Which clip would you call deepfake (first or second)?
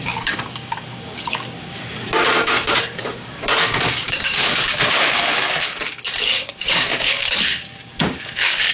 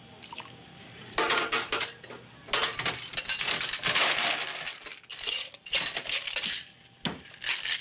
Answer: first